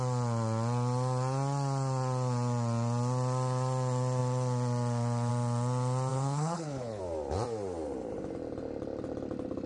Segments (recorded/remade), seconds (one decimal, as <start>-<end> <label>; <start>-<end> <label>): 0.0-6.1 recorded; 6.1-7.0 remade; 7.0-9.7 recorded